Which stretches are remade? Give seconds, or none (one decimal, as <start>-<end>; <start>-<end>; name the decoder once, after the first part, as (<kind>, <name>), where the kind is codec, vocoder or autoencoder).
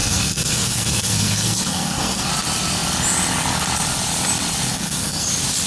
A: 0.0-2.3 (codec, SNAC); 4.7-5.3